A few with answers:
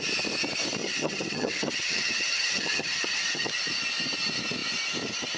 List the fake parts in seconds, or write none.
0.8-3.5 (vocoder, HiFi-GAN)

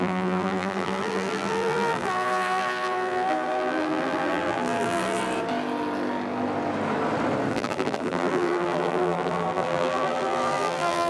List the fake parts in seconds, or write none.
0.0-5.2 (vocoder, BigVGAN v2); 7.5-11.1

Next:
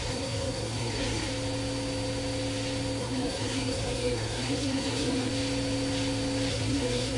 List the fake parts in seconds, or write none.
0.0-1.3 (codec, SNAC); 3.0-5.3; 6.5-7.2